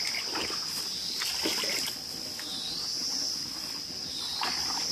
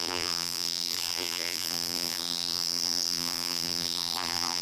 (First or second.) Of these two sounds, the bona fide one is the first